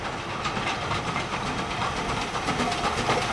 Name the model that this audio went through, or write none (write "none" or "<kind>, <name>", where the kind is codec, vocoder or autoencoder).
none